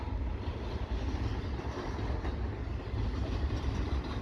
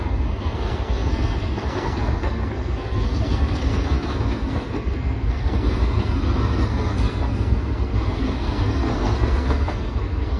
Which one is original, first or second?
first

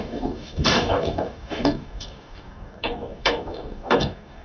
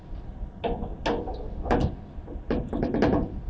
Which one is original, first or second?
second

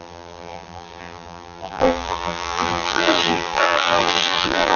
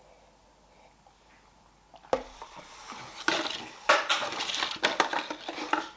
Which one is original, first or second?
second